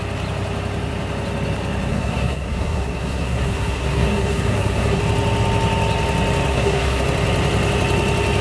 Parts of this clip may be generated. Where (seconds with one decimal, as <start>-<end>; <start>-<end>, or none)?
1.9-5.0; 6.5-7.0